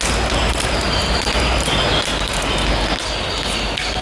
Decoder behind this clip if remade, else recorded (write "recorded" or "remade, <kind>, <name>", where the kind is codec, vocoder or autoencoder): recorded